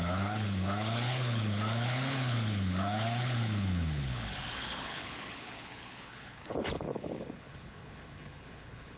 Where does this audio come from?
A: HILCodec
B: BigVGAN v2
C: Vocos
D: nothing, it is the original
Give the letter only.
A